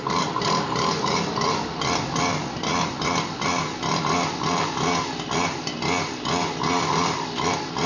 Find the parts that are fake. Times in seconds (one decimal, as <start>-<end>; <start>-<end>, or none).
none